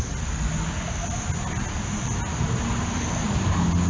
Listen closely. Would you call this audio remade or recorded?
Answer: recorded